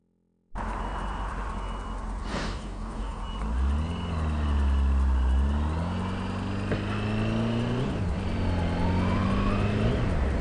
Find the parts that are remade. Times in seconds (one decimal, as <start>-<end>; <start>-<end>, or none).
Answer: 2.3-3.2